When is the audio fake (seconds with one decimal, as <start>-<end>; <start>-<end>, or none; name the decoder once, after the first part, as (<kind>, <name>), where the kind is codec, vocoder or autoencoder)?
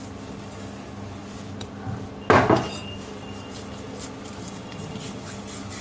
none